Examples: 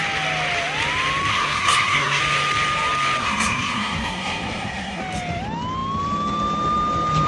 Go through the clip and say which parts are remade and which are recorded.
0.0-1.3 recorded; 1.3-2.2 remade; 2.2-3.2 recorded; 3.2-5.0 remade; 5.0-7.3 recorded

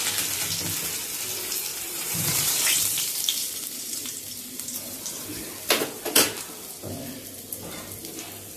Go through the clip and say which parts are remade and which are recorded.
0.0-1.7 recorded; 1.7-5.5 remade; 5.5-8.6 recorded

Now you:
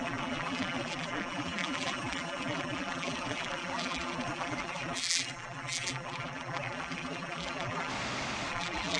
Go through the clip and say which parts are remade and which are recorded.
0.0-7.9 remade; 7.9-8.5 recorded; 8.5-9.0 remade

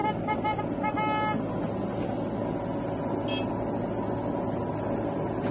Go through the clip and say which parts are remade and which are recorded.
0.0-5.5 recorded

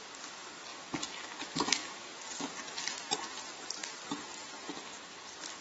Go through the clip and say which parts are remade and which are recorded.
0.0-5.6 recorded